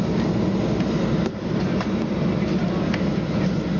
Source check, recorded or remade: recorded